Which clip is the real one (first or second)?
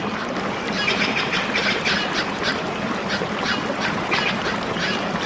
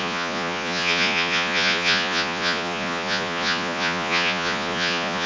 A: first